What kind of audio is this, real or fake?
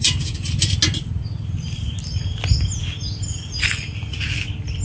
real